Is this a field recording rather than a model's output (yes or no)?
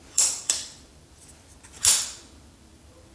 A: no